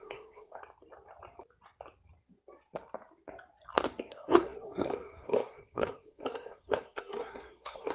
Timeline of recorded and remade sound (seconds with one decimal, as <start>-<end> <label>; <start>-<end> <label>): 0.0-0.6 remade; 0.6-4.1 recorded; 4.1-7.9 remade